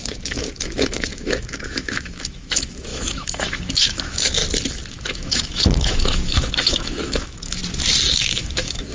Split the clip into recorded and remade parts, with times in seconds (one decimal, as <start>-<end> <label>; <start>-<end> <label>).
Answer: 0.0-4.4 remade; 4.4-4.9 recorded; 4.9-7.6 remade; 7.6-8.1 recorded; 8.1-8.9 remade